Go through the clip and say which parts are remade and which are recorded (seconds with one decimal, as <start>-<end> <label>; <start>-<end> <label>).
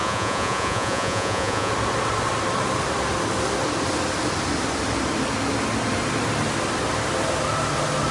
0.0-1.7 remade; 1.7-8.1 recorded